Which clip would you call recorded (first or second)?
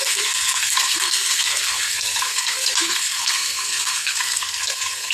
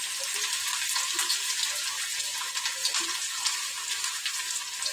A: second